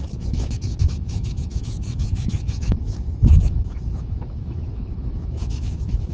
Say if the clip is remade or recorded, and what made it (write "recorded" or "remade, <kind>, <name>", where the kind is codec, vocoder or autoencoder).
remade, autoencoder, DAC-VAE